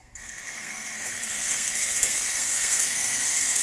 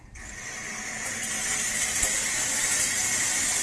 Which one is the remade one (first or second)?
first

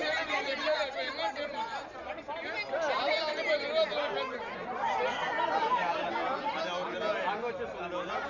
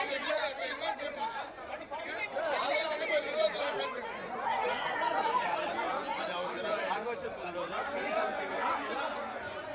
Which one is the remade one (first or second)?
second